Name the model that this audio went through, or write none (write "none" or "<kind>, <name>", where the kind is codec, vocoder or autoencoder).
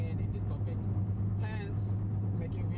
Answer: none